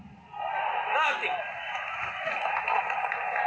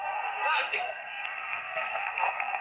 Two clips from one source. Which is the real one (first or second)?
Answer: first